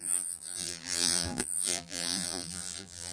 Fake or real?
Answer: fake